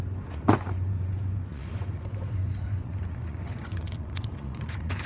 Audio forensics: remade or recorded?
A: remade